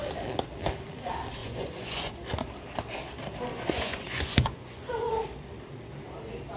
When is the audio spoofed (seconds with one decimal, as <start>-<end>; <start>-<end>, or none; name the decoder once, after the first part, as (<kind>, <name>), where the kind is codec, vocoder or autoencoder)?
1.4-2.1 (vocoder, Vocos); 3.5-5.1